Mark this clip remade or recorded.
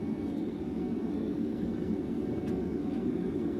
remade